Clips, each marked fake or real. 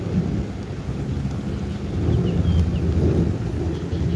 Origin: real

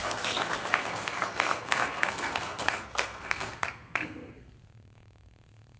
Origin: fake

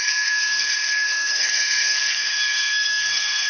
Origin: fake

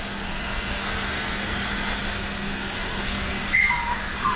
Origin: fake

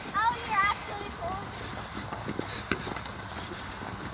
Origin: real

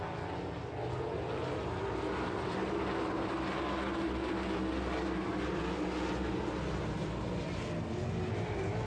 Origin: real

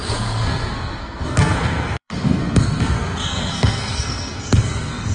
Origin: fake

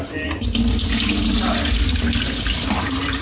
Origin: real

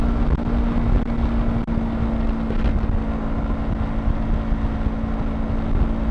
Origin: real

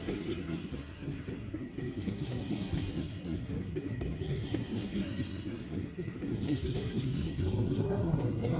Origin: fake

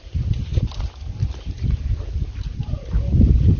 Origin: real